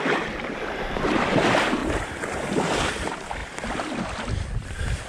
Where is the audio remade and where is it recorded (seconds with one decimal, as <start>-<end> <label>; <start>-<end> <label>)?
0.0-1.8 remade; 1.8-2.9 recorded; 2.9-5.1 remade